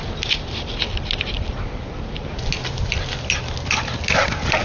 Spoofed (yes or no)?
no